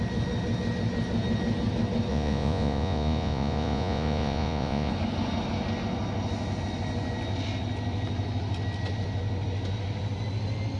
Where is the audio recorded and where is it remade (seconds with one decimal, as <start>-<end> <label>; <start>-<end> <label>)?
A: 0.0-2.1 recorded; 2.1-4.9 remade; 4.9-10.8 recorded